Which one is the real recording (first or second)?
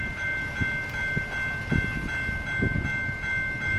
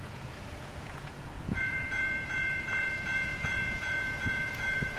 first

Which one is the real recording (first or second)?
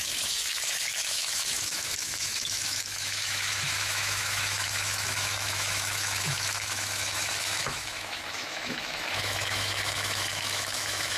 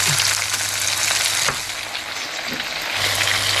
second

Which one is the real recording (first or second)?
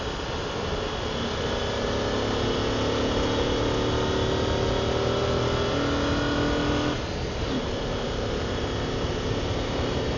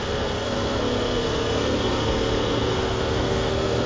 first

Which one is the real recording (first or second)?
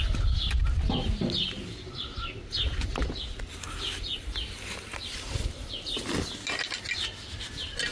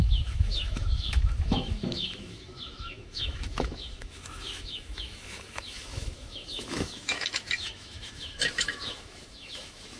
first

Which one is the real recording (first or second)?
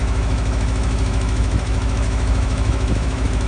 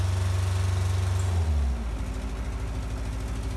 second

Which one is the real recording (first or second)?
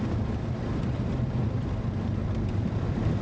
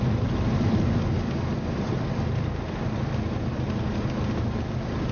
second